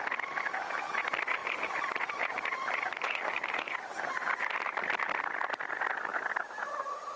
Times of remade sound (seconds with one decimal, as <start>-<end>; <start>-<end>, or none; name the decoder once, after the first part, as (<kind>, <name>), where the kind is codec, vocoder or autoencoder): 1.4-4.8 (vocoder, BigVGAN v2)